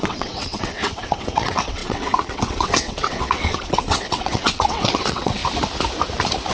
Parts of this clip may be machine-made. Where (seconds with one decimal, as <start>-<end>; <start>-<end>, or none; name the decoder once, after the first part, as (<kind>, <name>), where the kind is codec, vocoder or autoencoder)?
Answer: 0.0-5.4 (vocoder, WaveNeXt)